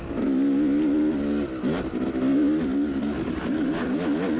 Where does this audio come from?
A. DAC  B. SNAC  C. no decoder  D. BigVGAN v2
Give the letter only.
C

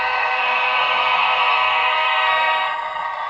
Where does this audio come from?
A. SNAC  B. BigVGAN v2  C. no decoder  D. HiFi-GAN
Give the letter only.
A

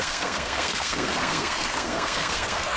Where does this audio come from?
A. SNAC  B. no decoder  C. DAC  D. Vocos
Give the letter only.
A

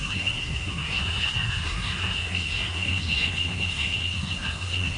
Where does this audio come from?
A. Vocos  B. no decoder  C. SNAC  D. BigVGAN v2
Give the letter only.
C